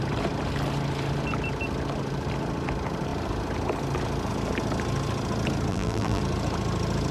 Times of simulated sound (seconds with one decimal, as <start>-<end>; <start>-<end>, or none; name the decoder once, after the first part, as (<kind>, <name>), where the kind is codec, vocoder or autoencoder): 5.7-6.2 (vocoder, BigVGAN v2)